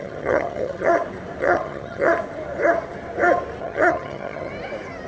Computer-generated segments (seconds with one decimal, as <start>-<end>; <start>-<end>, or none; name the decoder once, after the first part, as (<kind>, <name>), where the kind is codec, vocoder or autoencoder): 0.0-0.9 (vocoder, HiFi-GAN); 1.4-2.1; 3.6-4.5